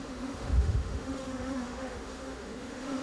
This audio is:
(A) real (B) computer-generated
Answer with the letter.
B